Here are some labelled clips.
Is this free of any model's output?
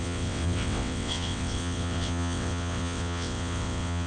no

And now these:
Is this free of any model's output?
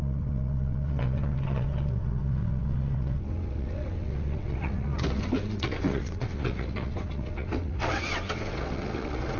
no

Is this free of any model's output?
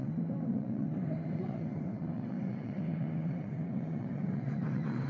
no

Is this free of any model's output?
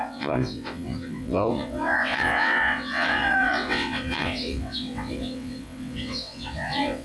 no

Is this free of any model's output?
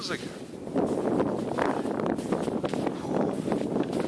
yes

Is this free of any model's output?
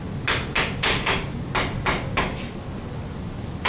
yes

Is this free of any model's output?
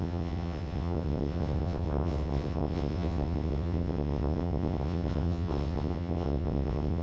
no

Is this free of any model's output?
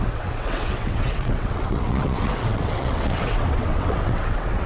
no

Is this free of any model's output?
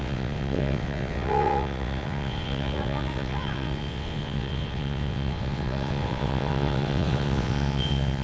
no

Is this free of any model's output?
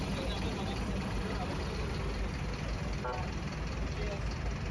yes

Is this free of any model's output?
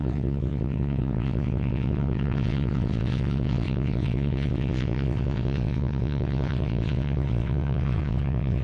no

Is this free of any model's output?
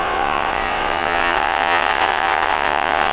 no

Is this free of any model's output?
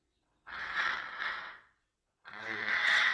no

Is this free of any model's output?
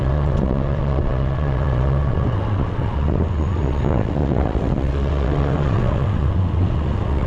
no